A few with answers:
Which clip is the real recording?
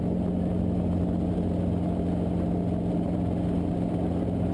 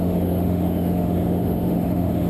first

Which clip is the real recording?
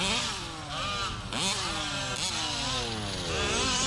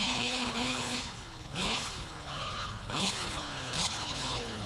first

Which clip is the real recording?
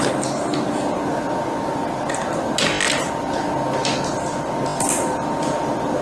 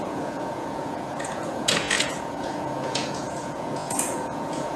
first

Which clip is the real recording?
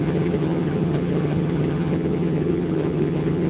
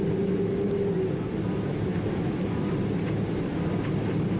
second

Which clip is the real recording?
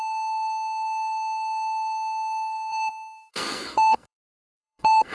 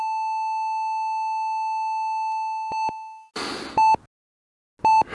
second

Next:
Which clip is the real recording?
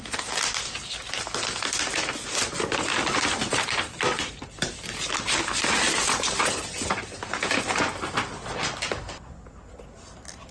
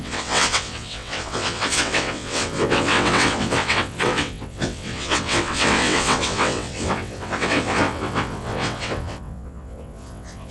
first